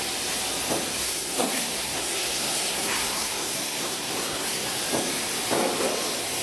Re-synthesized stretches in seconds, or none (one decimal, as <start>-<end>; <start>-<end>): 1.0-4.8